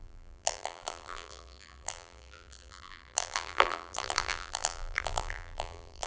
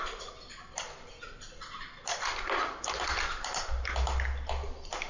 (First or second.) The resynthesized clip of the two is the first